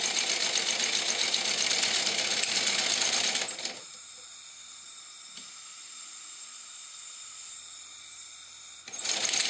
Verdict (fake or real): real